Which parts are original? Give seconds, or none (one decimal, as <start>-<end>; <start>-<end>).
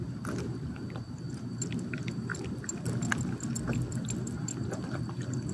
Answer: 0.0-5.5